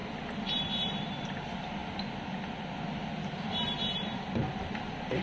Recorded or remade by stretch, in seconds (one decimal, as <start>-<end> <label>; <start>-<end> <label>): 0.0-5.2 recorded